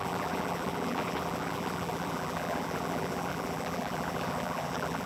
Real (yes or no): no